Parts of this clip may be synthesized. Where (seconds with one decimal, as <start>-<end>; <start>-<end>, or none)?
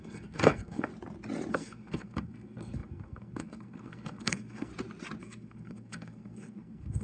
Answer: 0.0-0.9; 1.5-4.7; 5.2-7.0